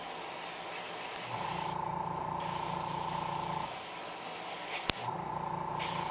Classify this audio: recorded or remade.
recorded